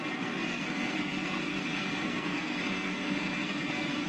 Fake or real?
fake